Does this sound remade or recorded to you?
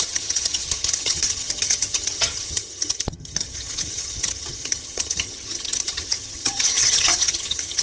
remade